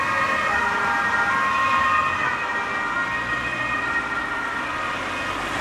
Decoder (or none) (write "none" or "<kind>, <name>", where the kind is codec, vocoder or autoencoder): none